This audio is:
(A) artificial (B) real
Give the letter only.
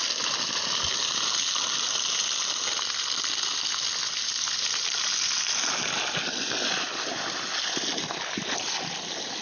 B